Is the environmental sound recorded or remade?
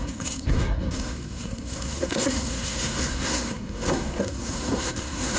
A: remade